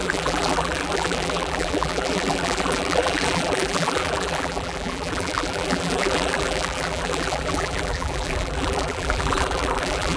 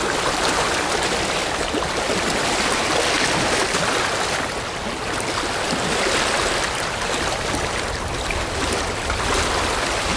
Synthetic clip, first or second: first